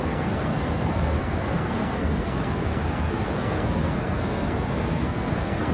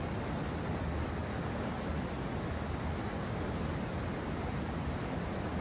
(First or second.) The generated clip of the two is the first